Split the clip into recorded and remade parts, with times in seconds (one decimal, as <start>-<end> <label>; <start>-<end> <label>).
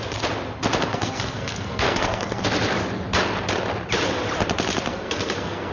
0.0-0.9 recorded; 0.9-2.4 remade; 2.4-4.9 recorded; 4.9-5.7 remade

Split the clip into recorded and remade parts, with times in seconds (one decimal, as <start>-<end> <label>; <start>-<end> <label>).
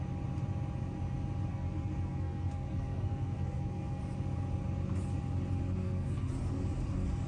0.0-1.5 recorded; 1.5-4.0 remade; 4.0-5.8 recorded; 5.8-6.3 remade; 6.3-7.3 recorded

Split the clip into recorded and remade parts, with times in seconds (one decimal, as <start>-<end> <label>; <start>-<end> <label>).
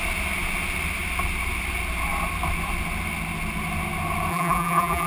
0.0-4.3 recorded; 4.3-5.1 remade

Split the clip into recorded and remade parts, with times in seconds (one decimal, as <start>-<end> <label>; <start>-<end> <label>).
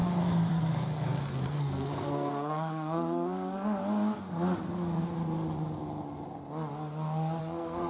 0.0-0.5 recorded; 0.5-3.8 remade; 3.8-7.4 recorded; 7.4-7.9 remade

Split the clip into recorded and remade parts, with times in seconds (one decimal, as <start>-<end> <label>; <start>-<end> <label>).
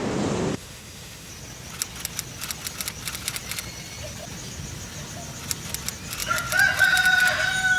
0.0-0.5 recorded; 0.5-1.3 remade; 1.3-7.8 recorded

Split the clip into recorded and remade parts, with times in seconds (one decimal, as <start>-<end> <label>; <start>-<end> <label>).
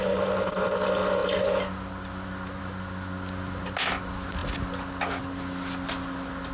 0.0-6.5 recorded